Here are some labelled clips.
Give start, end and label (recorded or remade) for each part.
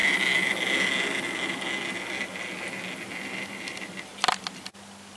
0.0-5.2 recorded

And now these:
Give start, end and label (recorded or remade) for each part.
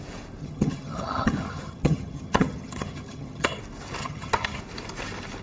0.0-0.4 recorded; 0.4-3.6 remade; 3.6-4.0 recorded; 4.0-4.6 remade; 4.6-5.4 recorded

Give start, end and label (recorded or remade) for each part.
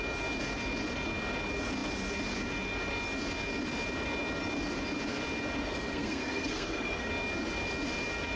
0.0-5.6 recorded; 5.6-7.1 remade; 7.1-8.4 recorded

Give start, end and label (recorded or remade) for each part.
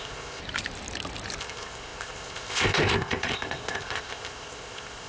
0.0-0.4 remade; 0.4-1.4 recorded; 1.4-5.1 remade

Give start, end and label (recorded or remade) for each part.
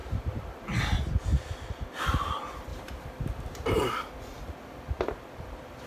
0.0-0.8 remade; 0.8-2.7 recorded; 2.7-3.9 remade; 3.9-5.9 recorded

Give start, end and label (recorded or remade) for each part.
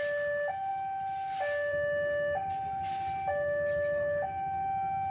0.0-5.1 recorded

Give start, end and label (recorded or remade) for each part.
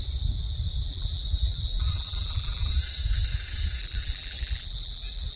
0.0-0.8 recorded; 0.8-2.7 remade; 2.7-3.8 recorded; 3.8-5.4 remade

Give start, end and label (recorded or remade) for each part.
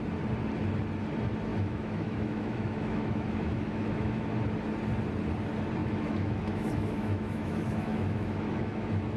0.0-1.5 recorded; 1.5-4.3 remade; 4.3-5.8 recorded; 5.8-9.2 remade